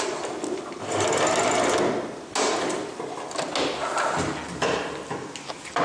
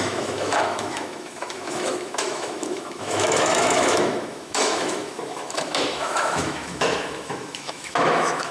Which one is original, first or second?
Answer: first